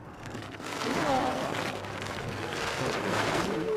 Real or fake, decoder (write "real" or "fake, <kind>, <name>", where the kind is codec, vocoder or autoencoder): fake, codec, SNAC